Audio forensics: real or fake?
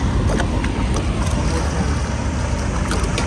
real